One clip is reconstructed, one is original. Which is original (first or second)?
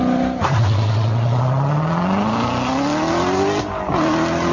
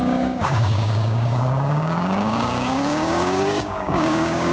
first